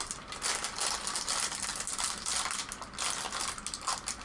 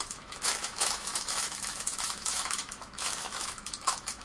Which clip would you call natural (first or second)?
first